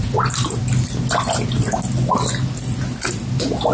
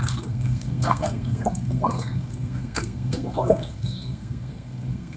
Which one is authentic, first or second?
first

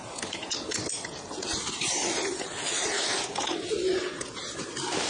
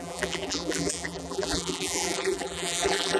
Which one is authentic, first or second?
first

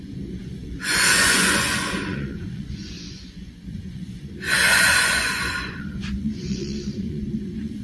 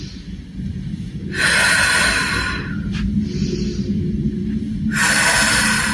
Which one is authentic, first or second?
second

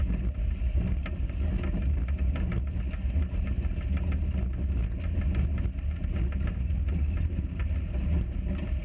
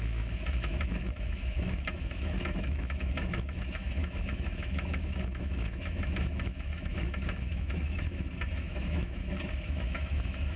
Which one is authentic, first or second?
first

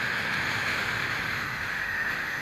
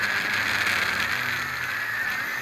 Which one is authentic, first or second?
second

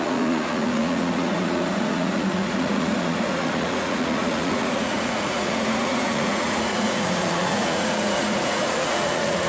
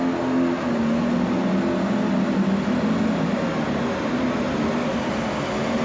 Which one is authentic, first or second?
second